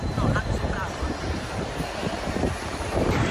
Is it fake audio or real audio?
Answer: fake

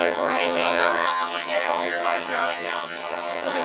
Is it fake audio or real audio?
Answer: fake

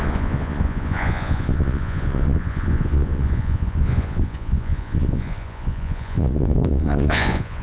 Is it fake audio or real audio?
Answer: fake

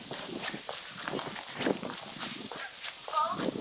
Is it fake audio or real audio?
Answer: real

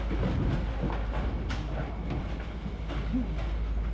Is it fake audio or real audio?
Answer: real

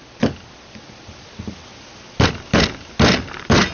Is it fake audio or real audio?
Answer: real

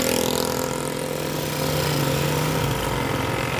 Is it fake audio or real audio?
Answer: real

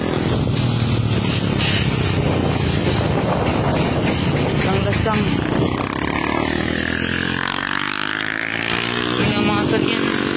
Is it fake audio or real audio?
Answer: real